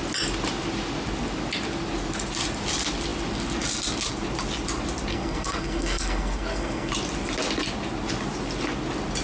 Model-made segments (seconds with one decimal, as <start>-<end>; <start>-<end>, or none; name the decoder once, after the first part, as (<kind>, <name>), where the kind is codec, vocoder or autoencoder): 5.1-6.9 (codec, SNAC)